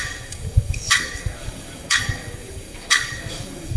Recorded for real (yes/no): no